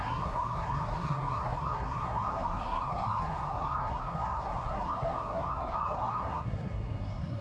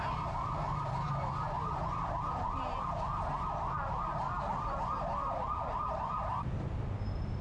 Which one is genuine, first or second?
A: second